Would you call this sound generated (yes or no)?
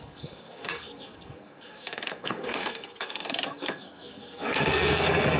yes